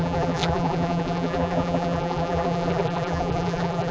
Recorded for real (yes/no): no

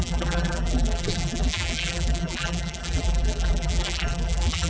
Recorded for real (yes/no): no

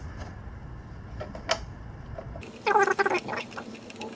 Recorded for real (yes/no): yes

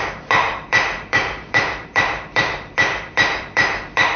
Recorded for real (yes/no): no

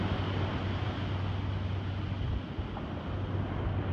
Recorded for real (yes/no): yes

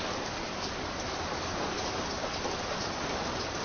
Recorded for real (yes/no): no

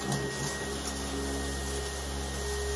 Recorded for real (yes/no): yes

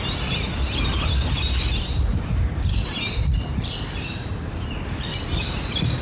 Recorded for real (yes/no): yes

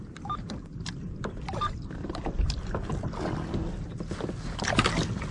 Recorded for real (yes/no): yes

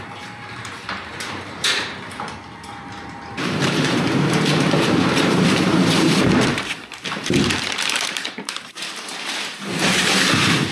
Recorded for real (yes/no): no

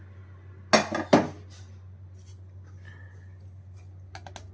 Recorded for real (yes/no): yes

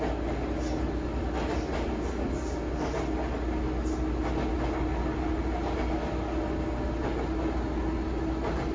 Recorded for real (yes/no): yes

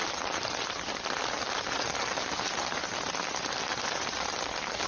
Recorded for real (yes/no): yes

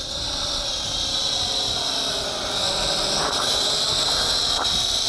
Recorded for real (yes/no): yes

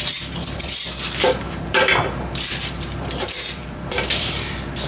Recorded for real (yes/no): no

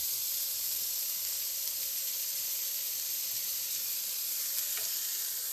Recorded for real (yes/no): no